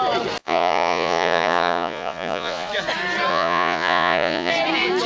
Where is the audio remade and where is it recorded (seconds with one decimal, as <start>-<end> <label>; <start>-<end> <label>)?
0.0-0.4 recorded; 0.4-2.7 remade; 2.7-3.3 recorded; 3.3-4.5 remade; 4.5-5.1 recorded